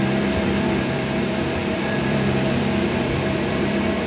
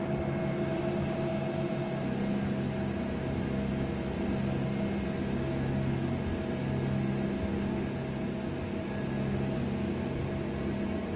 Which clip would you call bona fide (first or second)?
second